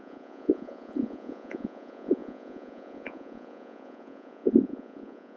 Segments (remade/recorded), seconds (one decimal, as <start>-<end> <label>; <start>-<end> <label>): 0.0-5.4 remade